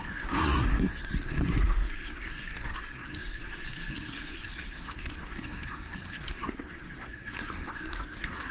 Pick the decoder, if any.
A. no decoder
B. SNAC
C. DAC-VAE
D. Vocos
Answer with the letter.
B